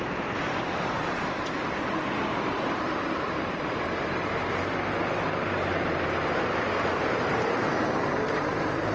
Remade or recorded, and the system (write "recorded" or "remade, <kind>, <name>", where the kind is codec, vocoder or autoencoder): remade, vocoder, BigVGAN v2